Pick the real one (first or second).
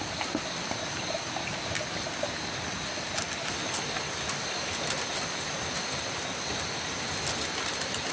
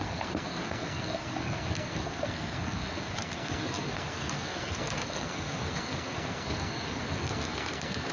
first